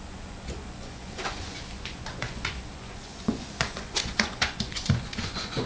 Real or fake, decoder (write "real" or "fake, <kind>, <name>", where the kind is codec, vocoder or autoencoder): fake, vocoder, Vocos